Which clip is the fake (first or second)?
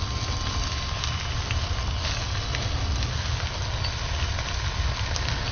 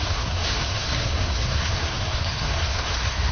second